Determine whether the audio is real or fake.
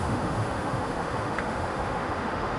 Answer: fake